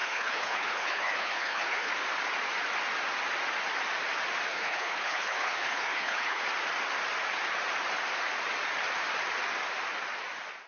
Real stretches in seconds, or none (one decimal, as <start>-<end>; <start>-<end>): 1.9-4.5; 6.4-10.7